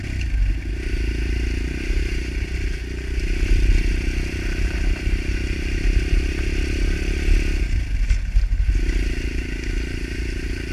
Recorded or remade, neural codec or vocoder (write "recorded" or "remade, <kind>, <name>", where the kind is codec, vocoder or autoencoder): recorded